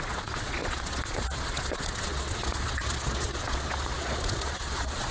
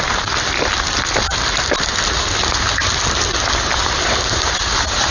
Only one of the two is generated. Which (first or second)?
first